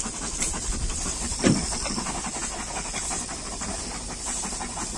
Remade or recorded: recorded